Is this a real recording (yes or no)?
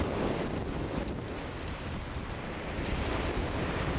yes